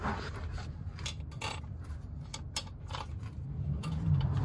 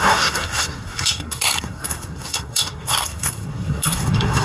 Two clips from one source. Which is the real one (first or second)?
first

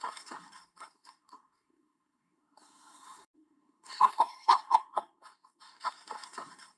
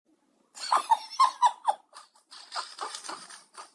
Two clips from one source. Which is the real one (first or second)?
second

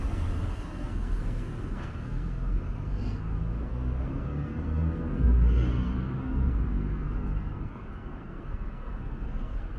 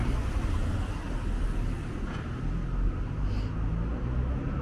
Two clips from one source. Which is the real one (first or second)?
second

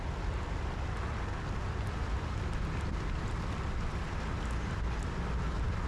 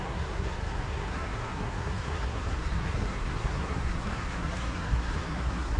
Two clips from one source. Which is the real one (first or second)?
first